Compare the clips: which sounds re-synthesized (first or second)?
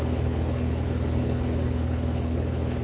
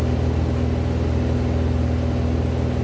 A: first